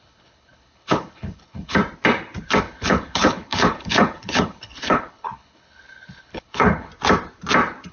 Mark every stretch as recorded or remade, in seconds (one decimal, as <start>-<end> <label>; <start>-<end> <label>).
0.0-1.8 remade; 1.8-2.6 recorded; 2.6-6.9 remade; 6.9-7.9 recorded